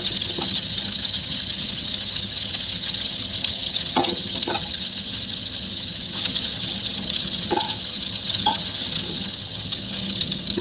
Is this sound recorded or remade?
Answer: remade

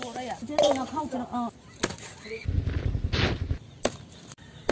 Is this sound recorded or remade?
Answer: recorded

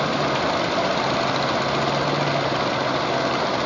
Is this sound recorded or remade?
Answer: recorded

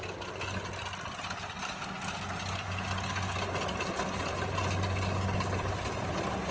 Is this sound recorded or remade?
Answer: recorded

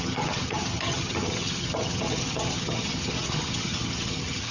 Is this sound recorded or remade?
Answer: remade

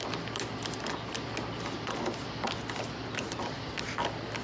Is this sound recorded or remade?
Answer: recorded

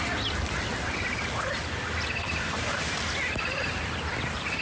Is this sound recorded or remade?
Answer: recorded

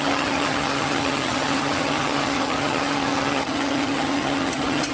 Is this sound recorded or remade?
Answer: remade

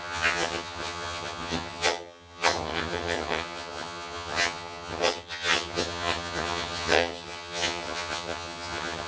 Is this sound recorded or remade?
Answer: remade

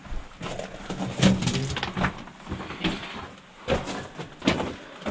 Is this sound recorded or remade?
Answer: recorded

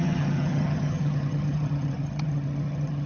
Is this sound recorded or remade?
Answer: remade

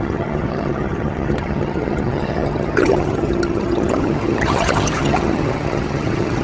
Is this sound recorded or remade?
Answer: remade